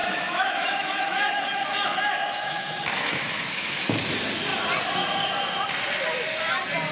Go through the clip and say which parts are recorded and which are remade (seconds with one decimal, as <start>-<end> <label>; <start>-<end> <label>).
0.0-4.1 remade; 4.1-6.9 recorded